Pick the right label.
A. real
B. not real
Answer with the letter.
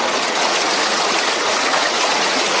B